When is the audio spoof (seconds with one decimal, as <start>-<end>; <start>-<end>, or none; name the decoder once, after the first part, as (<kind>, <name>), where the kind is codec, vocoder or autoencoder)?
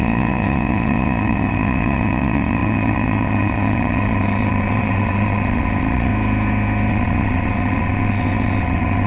0.0-6.1 (vocoder, WaveNeXt); 6.9-9.1